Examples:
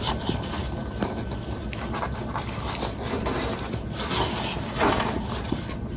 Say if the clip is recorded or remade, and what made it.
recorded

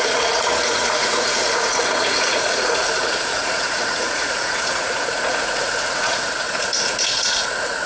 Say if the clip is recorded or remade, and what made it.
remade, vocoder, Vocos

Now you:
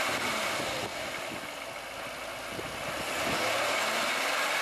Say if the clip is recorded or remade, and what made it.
recorded